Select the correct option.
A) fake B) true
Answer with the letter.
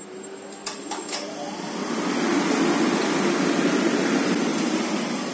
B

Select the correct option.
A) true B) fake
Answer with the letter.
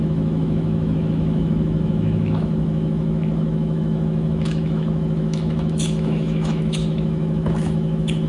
B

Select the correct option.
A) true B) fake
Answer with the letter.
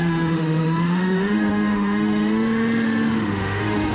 B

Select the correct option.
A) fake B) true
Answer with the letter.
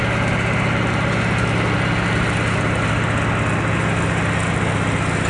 B